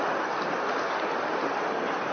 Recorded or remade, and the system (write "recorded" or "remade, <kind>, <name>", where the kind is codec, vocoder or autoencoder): recorded